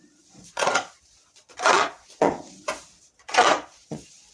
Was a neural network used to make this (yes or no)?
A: yes